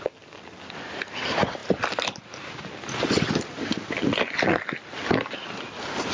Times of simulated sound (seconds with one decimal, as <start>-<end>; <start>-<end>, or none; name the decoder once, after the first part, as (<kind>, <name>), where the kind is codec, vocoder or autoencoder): none